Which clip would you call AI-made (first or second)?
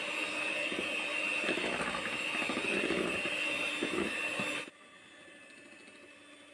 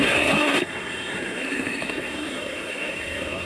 second